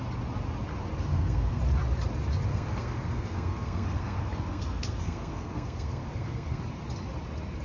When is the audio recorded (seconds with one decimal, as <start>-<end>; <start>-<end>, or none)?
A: 0.0-1.1; 1.6-2.5; 6.6-7.6